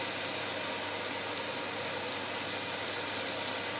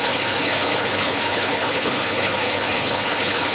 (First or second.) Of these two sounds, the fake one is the second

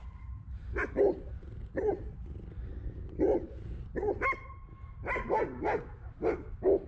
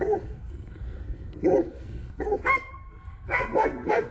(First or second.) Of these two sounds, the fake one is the second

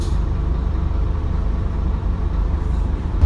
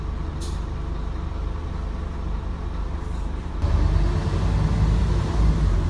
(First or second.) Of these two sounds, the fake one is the first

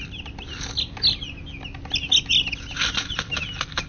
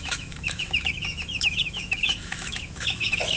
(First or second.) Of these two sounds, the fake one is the second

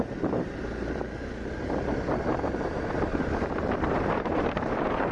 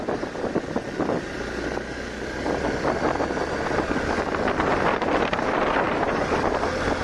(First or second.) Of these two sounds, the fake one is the first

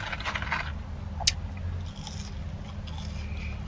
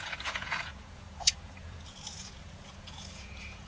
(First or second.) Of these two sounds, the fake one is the second